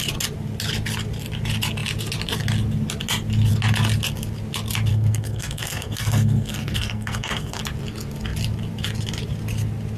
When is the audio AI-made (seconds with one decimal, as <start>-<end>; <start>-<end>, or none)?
4.9-7.6